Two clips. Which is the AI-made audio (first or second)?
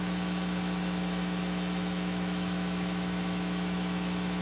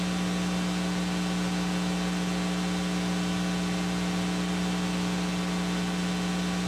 first